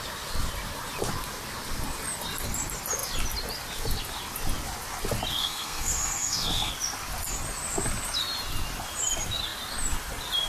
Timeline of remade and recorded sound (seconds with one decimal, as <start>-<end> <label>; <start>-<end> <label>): 0.0-5.3 recorded; 5.3-6.7 remade; 6.7-10.5 recorded